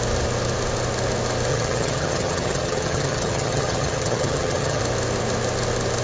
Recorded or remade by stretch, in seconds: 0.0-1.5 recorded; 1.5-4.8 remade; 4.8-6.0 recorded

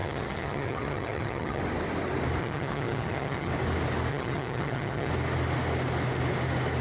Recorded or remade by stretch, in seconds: 0.0-1.6 remade; 1.6-2.4 recorded; 2.4-3.5 remade; 3.5-4.1 recorded; 4.1-5.1 remade; 5.1-6.8 recorded